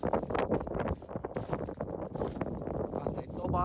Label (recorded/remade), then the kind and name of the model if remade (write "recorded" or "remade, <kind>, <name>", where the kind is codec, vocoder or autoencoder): recorded